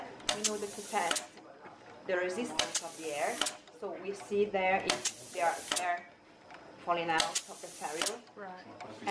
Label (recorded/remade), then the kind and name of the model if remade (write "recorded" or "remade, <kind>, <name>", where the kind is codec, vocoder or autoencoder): recorded